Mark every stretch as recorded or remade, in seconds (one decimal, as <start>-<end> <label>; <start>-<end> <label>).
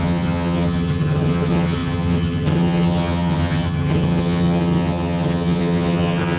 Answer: 0.0-6.4 remade